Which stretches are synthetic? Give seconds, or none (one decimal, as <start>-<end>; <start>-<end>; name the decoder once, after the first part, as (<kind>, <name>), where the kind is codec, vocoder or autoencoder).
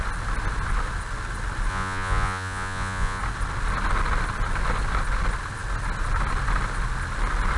1.7-3.2 (vocoder, Vocos)